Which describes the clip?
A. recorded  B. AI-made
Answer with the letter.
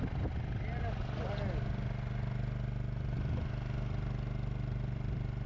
A